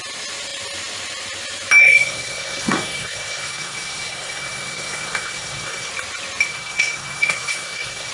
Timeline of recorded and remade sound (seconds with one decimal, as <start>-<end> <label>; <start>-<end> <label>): 0.0-1.8 recorded; 1.8-5.9 remade; 5.9-6.5 recorded; 6.5-8.1 remade